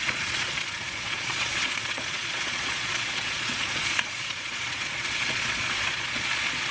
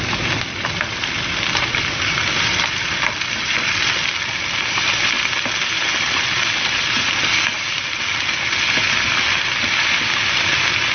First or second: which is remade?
first